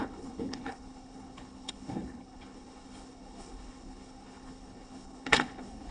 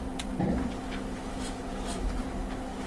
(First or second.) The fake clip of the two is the first